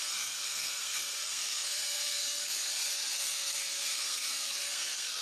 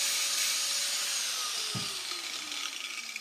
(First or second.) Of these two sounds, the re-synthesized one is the first